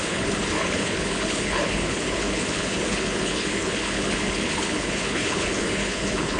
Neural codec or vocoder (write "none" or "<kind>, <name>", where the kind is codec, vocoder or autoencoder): codec, HILCodec